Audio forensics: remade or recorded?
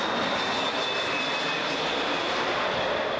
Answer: recorded